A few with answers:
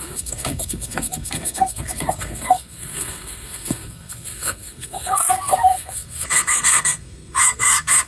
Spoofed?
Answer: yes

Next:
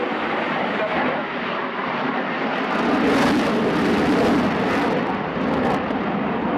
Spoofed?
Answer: no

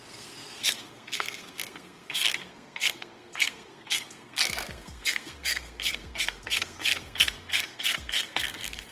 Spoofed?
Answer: yes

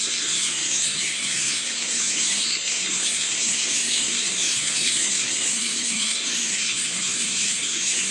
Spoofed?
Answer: yes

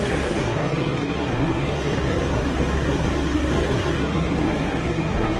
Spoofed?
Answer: yes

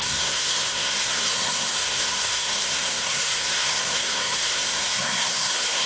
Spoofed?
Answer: yes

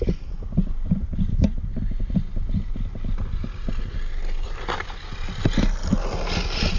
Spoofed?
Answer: no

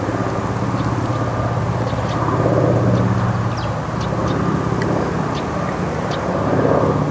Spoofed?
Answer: no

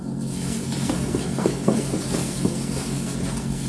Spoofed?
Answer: yes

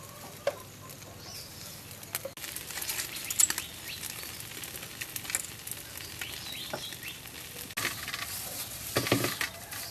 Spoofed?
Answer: no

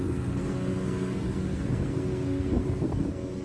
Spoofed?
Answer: yes